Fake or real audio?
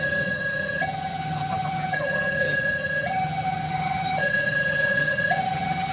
fake